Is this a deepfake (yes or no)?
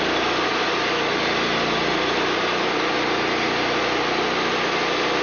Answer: no